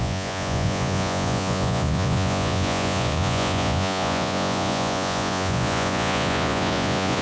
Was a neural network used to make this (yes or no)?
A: yes